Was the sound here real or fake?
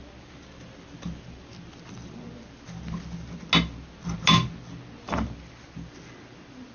real